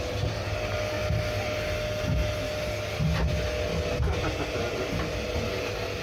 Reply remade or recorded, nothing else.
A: recorded